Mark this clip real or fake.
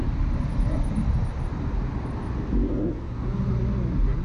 real